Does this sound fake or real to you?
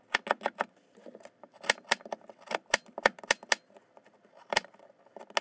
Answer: real